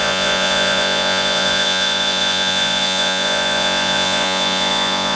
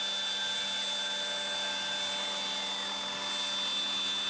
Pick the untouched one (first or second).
second